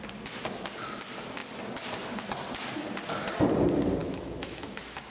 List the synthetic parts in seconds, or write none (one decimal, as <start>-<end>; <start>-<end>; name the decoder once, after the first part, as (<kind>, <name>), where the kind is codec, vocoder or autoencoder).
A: 4.0-5.1 (autoencoder, DAC-VAE)